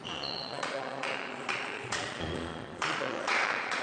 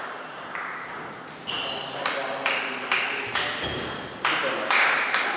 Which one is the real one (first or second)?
second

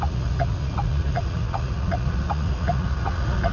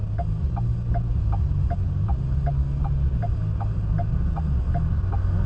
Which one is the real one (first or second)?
second